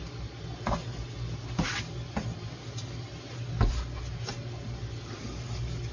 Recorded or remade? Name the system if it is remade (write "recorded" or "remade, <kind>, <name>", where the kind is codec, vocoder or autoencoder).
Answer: recorded